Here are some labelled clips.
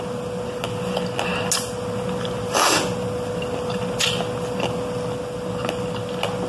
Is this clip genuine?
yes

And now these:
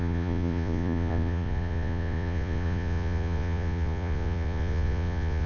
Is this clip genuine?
no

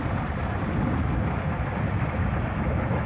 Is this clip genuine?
yes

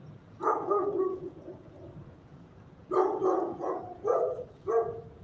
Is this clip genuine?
no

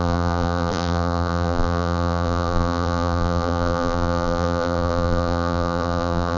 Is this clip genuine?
no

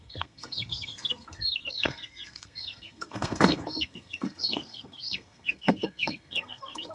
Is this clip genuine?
no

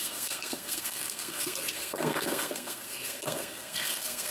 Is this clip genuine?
no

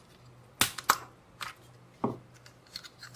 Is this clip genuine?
yes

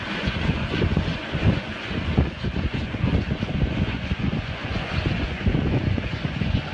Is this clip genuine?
no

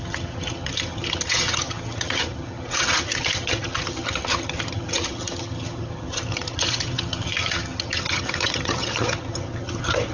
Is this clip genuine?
no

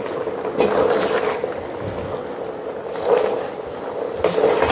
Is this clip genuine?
yes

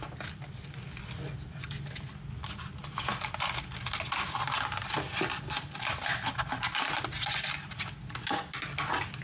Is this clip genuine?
yes